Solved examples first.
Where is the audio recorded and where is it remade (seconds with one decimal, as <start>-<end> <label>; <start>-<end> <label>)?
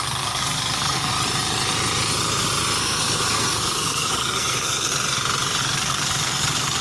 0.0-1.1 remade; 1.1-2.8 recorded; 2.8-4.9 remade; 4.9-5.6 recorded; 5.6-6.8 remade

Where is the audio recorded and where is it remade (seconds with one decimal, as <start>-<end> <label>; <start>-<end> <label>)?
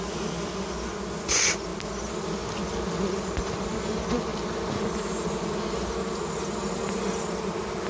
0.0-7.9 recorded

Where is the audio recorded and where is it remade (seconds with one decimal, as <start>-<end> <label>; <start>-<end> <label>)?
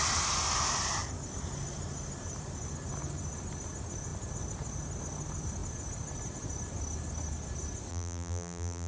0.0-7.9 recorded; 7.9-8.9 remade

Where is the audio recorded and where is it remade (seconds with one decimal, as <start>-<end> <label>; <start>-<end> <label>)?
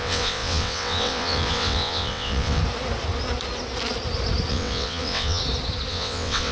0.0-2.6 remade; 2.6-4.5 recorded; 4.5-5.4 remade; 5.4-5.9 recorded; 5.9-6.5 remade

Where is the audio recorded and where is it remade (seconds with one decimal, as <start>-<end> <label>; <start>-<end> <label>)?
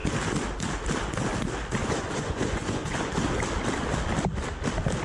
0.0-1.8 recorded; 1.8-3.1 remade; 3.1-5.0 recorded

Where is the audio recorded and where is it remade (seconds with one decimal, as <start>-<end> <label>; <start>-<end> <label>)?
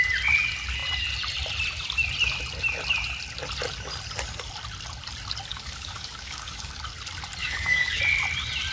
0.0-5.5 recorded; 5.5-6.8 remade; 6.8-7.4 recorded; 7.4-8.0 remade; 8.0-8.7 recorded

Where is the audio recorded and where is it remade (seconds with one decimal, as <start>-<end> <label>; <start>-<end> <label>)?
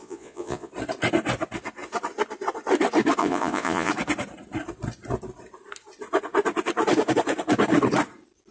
0.0-0.7 remade; 0.7-3.2 recorded; 3.2-3.9 remade; 3.9-8.5 recorded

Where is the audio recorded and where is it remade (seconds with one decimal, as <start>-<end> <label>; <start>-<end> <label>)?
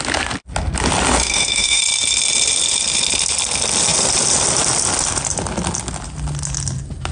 0.0-1.2 recorded; 1.2-1.8 remade; 1.8-7.1 recorded